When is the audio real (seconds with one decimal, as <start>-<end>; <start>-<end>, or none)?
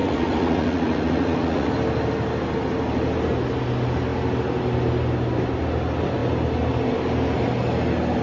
1.7-8.2